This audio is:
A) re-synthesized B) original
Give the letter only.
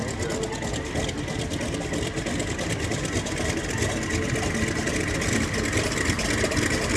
B